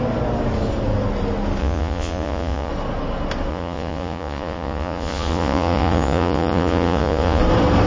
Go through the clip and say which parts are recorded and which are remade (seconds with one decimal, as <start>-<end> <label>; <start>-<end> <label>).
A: 0.0-1.6 recorded; 1.6-2.7 remade; 2.7-3.5 recorded; 3.5-7.4 remade; 7.4-7.9 recorded